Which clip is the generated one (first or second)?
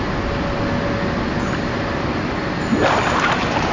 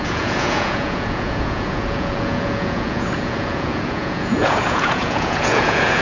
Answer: second